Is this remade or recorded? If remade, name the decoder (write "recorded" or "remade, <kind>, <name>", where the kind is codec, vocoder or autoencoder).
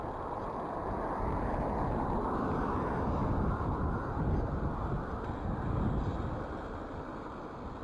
recorded